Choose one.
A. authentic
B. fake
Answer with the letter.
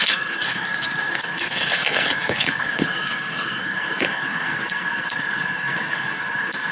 B